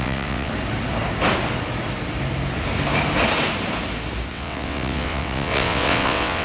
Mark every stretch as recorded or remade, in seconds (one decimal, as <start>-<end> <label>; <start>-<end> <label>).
0.0-0.5 remade; 0.5-4.3 recorded; 4.3-6.4 remade